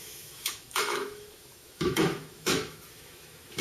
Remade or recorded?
remade